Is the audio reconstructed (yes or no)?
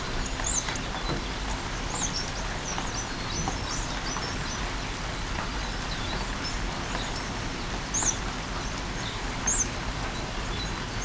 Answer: no